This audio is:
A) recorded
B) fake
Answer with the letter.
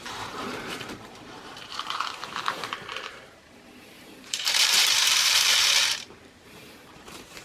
B